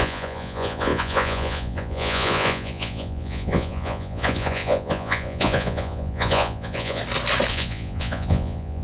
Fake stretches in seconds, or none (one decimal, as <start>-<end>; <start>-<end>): 0.0-7.0; 7.5-8.8